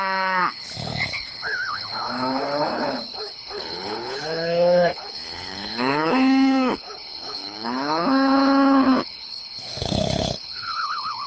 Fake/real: fake